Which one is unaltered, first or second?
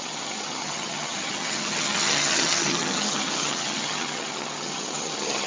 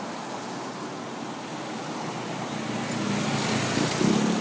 second